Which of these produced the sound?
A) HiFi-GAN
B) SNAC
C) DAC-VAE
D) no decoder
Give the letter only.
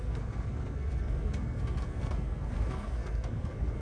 B